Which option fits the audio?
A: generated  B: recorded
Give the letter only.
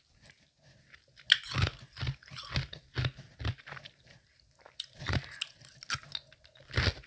B